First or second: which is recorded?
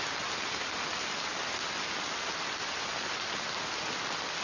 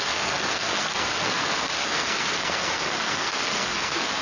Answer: first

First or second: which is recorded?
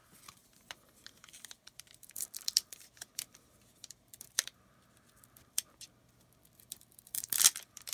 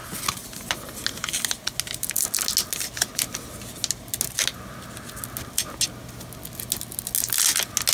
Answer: second